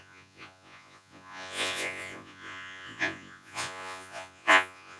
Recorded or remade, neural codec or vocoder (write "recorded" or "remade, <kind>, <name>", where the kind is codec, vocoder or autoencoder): remade, vocoder, Vocos